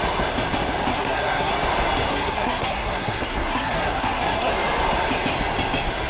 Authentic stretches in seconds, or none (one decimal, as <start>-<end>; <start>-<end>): 0.0-0.9; 1.5-2.1; 4.5-6.1

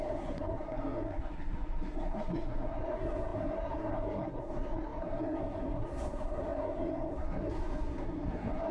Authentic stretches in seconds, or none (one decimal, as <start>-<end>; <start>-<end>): none

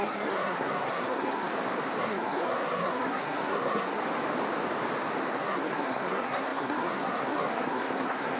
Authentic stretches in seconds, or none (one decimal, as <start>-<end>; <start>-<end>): 1.5-2.0; 4.0-5.3

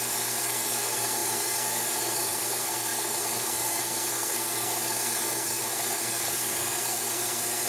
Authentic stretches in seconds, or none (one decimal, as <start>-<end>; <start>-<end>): none